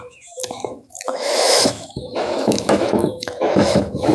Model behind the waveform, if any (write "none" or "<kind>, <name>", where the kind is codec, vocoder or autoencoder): autoencoder, DAC-VAE